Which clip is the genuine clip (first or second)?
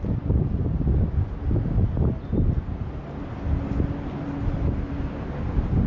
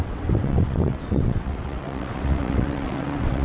first